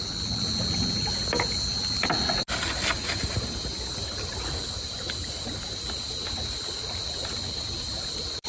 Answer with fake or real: real